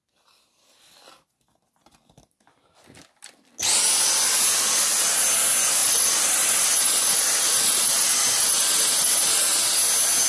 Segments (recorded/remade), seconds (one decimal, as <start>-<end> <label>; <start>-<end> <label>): 0.0-5.8 recorded; 5.8-9.4 remade; 9.4-10.3 recorded